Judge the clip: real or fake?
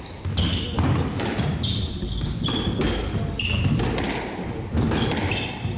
real